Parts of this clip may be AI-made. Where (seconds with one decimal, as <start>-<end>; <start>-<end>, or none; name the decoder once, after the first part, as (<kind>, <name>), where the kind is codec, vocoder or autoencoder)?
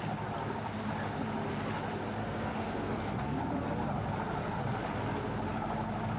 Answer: 2.2-3.4 (codec, SNAC)